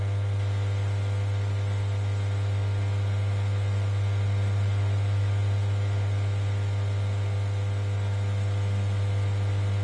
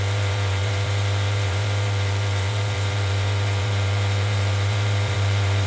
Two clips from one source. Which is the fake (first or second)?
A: second